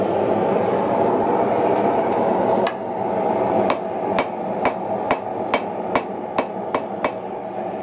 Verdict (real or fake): real